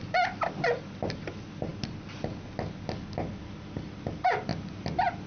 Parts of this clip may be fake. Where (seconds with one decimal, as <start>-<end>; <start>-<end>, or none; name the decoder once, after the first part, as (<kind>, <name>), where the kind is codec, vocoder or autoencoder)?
none